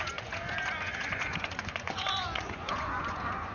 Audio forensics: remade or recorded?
remade